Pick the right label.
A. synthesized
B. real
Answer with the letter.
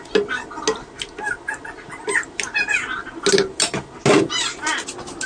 B